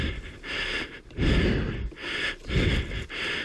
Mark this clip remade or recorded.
recorded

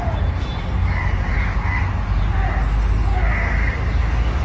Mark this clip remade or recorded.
recorded